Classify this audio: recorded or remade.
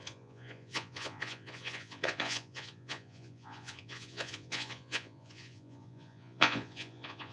remade